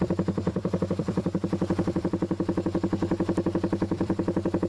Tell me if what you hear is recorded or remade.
remade